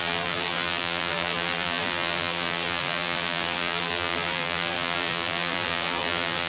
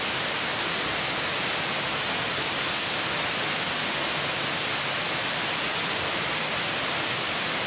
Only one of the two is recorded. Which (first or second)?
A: second